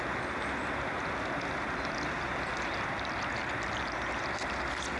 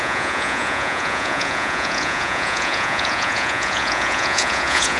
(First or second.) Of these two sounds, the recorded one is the first